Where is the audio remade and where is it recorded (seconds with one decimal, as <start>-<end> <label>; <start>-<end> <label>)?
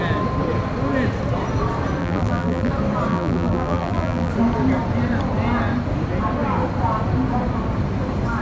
0.0-2.0 recorded; 2.0-2.7 remade; 2.7-3.1 recorded; 3.1-4.3 remade; 4.3-8.4 recorded